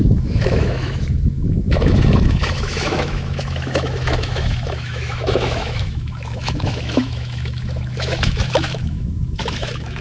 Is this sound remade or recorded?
remade